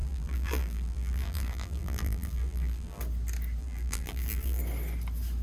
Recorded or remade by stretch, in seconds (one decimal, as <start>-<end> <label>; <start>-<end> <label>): 0.0-3.0 remade; 3.0-3.6 recorded; 3.6-4.6 remade; 4.6-5.4 recorded